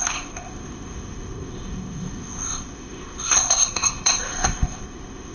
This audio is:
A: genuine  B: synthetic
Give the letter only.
B